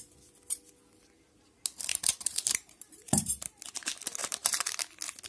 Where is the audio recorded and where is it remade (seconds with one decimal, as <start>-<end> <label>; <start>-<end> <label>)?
0.0-1.9 recorded; 1.9-3.6 remade; 3.6-4.2 recorded; 4.2-4.8 remade; 4.8-5.3 recorded